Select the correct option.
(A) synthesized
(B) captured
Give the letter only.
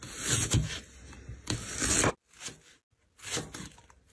B